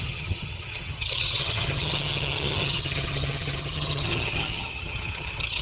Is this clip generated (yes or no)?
yes